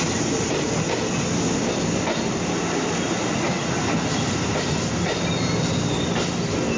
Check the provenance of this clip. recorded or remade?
recorded